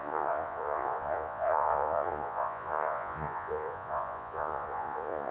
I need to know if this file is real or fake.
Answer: fake